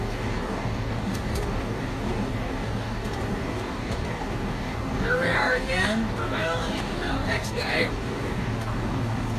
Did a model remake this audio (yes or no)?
yes